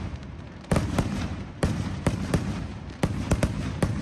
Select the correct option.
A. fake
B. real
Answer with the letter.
A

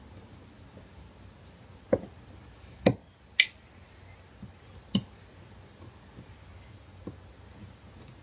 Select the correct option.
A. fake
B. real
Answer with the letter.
B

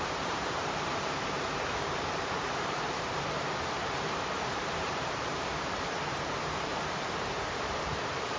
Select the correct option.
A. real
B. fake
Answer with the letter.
B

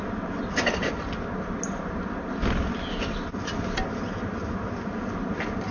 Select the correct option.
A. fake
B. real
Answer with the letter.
B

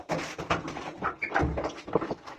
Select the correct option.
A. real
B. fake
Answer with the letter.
A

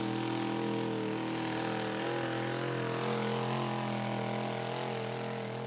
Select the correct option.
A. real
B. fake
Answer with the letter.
A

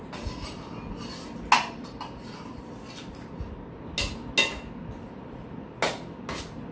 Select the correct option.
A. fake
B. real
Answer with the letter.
B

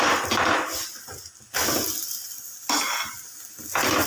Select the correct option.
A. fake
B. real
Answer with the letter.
B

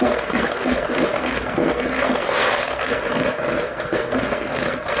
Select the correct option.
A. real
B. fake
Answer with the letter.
B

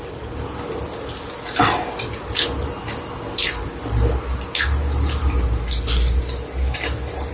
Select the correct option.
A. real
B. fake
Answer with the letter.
A